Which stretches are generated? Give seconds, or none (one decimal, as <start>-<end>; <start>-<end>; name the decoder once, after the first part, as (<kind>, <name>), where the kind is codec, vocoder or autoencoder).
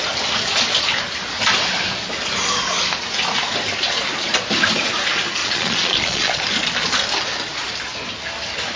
5.4-6.4 (vocoder, Vocos)